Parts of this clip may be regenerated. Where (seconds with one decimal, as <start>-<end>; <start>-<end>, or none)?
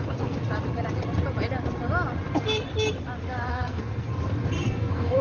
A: 0.0-0.4; 3.5-4.1; 4.6-5.2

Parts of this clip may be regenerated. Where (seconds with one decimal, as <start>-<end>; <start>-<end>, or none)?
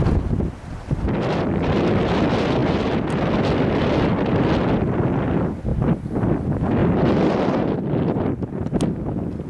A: none